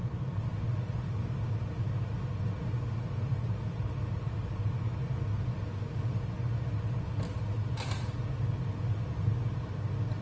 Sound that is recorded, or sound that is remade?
recorded